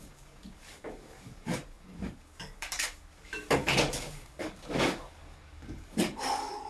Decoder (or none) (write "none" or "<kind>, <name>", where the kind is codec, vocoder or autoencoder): codec, DAC